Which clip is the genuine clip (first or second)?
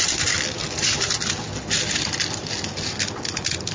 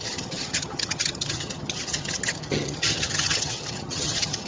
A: first